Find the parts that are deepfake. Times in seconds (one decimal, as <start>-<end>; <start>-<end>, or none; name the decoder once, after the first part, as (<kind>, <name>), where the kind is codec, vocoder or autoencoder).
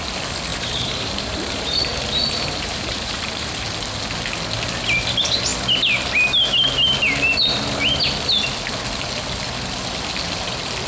0.5-3.5 (vocoder, BigVGAN v2)